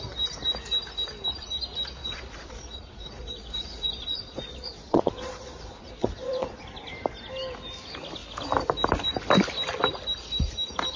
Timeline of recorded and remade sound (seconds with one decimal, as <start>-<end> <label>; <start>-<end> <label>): 0.0-2.0 recorded; 2.0-6.6 remade; 6.6-11.0 recorded

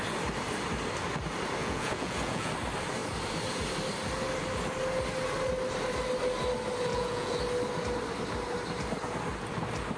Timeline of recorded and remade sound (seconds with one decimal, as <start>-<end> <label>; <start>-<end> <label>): 0.0-1.6 recorded; 1.6-2.5 remade; 2.5-6.9 recorded; 6.9-7.4 remade; 7.4-10.0 recorded

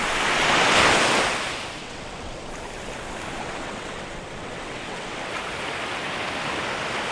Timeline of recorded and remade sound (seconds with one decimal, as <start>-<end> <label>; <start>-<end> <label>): 0.0-1.8 recorded; 1.8-2.5 remade; 2.5-3.4 recorded; 3.4-5.3 remade; 5.3-7.1 recorded

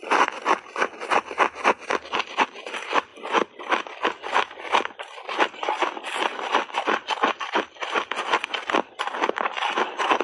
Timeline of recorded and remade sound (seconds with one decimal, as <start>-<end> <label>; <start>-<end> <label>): 0.0-10.2 recorded

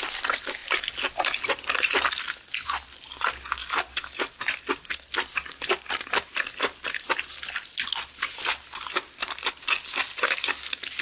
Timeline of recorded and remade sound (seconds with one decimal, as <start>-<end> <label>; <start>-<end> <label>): 0.0-11.0 recorded